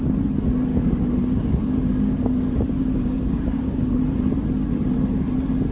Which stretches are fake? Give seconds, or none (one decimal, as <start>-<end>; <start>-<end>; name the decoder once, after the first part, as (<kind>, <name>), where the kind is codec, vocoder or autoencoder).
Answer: 0.7-4.0 (codec, DAC)